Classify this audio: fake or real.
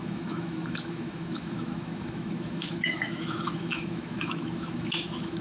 fake